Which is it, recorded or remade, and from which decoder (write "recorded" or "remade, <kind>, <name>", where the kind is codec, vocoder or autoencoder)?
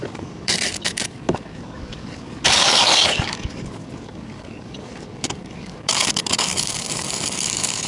remade, codec, DAC